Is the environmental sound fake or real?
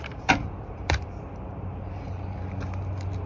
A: fake